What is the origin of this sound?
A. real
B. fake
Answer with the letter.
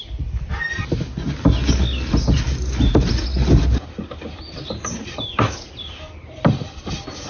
A